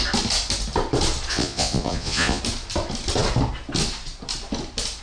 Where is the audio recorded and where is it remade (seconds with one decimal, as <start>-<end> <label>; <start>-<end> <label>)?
0.0-1.3 recorded; 1.3-2.4 remade; 2.4-5.0 recorded